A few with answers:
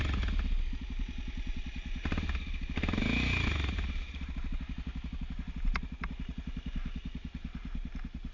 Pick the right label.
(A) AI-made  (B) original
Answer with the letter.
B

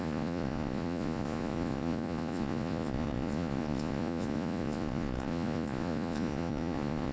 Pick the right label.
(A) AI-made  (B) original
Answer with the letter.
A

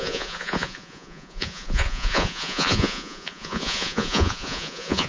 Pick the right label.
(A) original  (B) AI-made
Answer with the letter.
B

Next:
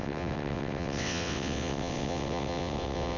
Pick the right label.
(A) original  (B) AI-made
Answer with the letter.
B